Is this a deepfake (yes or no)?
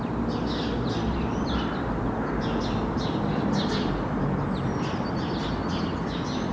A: no